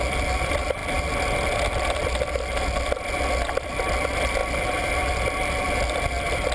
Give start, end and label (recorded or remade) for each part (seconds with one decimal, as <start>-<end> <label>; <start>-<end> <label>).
0.0-6.5 recorded